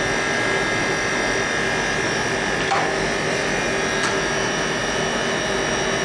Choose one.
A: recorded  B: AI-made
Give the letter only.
A